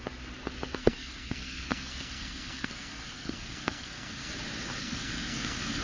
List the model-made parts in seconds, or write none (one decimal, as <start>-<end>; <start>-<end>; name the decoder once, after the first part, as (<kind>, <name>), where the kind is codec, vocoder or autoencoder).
0.8-4.3 (codec, SNAC); 4.8-5.8